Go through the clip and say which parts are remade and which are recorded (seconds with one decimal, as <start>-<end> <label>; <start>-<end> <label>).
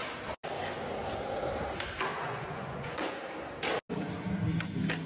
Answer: 0.0-2.1 recorded; 2.1-3.2 remade; 3.2-5.1 recorded